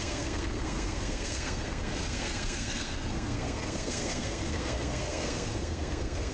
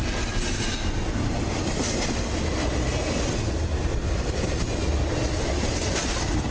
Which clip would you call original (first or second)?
second